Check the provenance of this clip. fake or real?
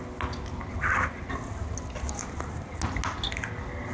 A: real